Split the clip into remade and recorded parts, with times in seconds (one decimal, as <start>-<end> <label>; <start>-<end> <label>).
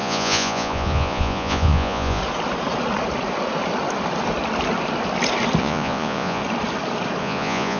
0.0-2.2 remade; 2.2-5.6 recorded; 5.6-6.4 remade; 6.4-7.2 recorded; 7.2-7.8 remade